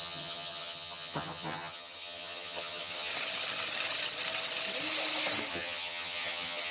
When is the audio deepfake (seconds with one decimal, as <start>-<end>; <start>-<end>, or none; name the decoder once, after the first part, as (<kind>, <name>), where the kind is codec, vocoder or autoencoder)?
0.0-3.1 (vocoder, HiFi-GAN); 5.5-6.7